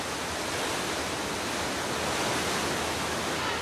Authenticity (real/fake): real